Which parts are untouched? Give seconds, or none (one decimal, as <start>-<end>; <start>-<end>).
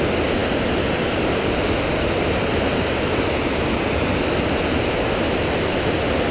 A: 0.0-6.3